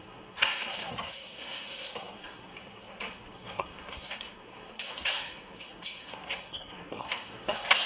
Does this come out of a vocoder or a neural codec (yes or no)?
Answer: yes